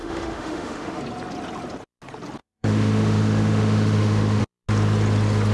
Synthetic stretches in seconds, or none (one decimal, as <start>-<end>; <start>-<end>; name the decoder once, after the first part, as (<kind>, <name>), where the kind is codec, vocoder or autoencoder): 0.0-1.0 (autoencoder, DAC-VAE); 2.4-4.4